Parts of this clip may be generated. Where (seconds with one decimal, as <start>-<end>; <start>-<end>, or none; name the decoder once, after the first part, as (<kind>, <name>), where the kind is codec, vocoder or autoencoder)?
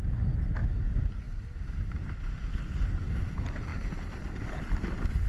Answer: none